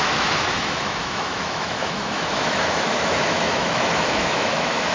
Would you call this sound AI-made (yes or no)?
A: yes